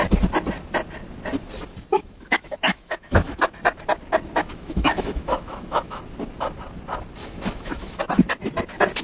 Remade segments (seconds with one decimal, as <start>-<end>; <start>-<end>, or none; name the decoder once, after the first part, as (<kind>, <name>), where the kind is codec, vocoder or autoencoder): 1.9-3.4 (autoencoder, DAC-VAE); 4.4-6.0; 7.2-8.0